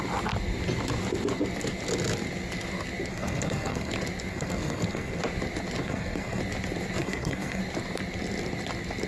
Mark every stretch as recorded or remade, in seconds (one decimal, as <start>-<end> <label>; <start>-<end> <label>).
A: 0.0-3.1 recorded; 3.1-3.9 remade; 3.9-4.3 recorded; 4.3-5.2 remade; 5.2-5.8 recorded; 5.8-6.4 remade; 6.4-7.0 recorded; 7.0-7.6 remade; 7.6-9.1 recorded